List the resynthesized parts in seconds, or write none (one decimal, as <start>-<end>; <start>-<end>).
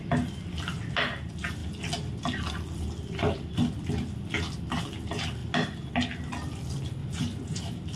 7.0-7.6